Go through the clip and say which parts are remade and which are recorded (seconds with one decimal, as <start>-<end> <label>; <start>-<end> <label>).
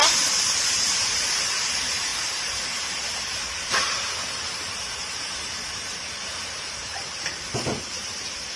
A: 0.0-8.6 remade